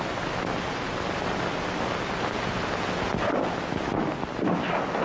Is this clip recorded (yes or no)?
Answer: yes